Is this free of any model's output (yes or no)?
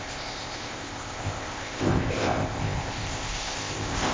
no